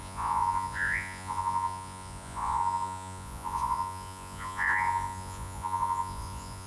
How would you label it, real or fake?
fake